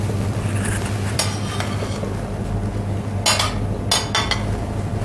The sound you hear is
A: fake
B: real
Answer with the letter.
B